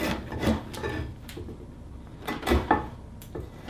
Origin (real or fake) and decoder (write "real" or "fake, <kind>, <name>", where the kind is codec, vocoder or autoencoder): real